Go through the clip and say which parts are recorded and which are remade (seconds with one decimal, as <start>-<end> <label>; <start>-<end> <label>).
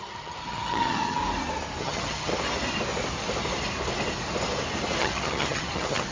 0.0-1.2 remade; 1.2-1.8 recorded; 1.8-2.3 remade; 2.3-5.0 recorded; 5.0-6.1 remade